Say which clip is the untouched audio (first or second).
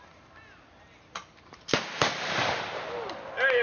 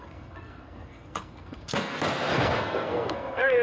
first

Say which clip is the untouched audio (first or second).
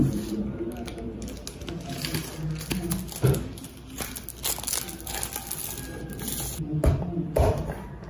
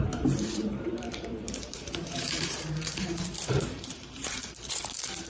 first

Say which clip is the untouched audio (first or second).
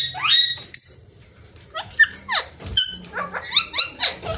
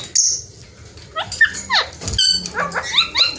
second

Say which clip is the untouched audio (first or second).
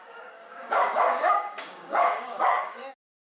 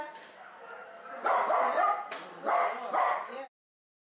second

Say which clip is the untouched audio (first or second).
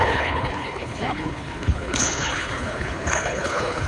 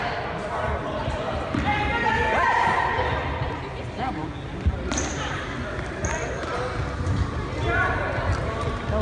second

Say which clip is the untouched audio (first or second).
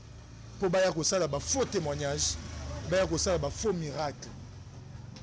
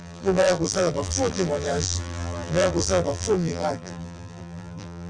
first